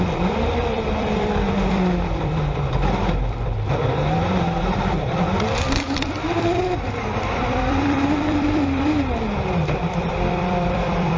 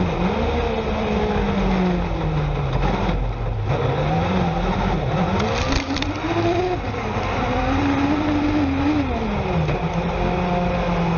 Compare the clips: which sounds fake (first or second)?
first